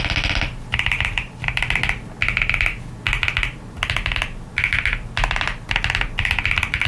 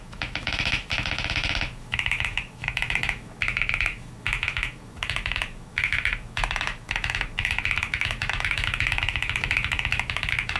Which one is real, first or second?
first